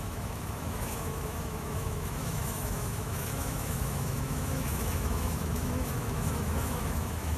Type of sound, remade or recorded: remade